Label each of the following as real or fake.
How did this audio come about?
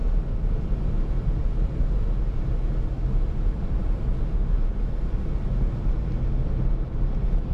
real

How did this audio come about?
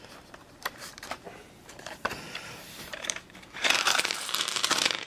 fake